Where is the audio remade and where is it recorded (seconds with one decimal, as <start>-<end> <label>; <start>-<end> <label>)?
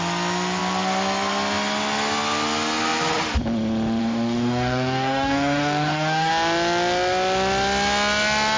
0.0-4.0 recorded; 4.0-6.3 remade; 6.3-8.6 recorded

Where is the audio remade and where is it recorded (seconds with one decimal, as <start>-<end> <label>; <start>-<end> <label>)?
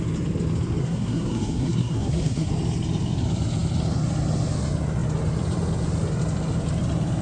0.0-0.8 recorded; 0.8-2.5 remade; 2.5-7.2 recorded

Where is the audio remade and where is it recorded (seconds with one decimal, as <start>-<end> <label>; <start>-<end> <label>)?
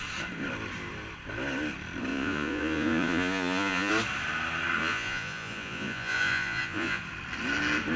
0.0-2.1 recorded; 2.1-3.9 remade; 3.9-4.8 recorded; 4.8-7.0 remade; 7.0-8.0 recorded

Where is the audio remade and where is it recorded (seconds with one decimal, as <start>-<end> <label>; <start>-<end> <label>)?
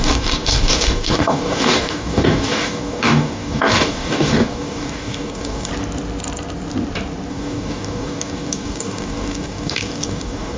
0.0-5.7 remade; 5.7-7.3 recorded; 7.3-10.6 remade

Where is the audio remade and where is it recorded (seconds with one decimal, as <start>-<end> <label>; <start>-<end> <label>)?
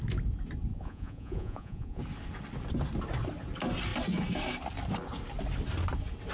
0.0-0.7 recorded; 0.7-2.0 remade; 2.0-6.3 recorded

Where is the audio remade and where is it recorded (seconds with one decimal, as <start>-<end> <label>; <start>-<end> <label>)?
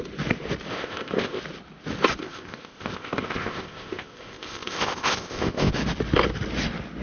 0.0-0.7 recorded; 0.7-1.4 remade; 1.4-2.2 recorded; 2.2-5.7 remade; 5.7-7.0 recorded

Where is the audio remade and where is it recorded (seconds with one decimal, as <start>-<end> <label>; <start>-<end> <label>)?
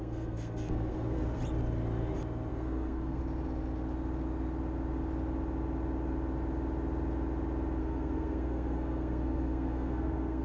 0.0-1.2 remade; 1.2-2.5 recorded; 2.5-3.2 remade; 3.2-7.8 recorded; 7.8-10.4 remade